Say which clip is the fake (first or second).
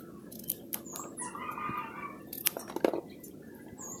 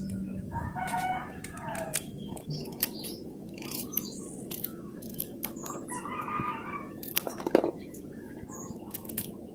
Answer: second